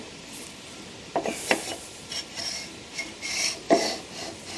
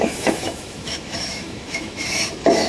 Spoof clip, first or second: second